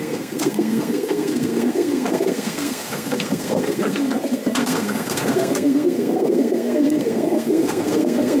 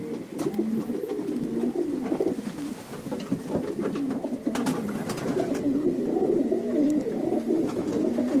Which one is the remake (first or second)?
first